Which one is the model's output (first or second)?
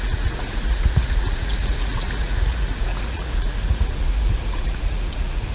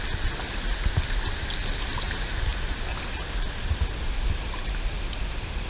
first